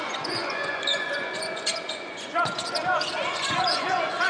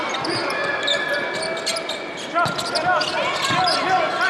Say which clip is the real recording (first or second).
second